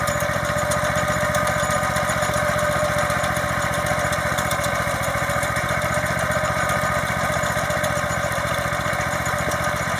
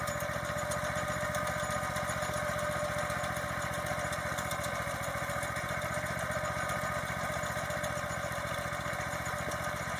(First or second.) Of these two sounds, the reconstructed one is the first